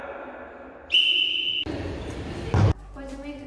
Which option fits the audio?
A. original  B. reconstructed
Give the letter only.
A